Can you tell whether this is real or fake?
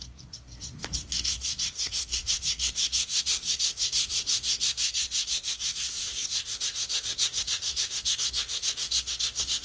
fake